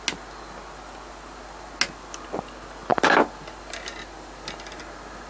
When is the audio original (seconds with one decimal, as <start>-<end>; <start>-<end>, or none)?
0.0-5.3